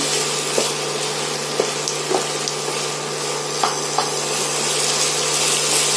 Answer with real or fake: real